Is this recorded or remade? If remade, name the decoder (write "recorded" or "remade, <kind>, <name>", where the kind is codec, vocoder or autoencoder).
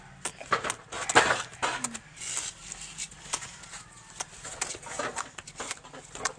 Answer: recorded